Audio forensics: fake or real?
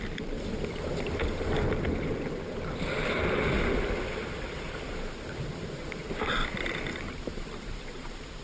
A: fake